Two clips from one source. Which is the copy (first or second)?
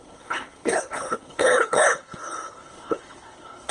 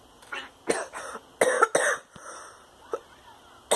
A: first